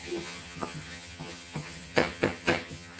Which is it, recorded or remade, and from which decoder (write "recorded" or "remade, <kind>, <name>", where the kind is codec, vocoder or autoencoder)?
remade, vocoder, HiFi-GAN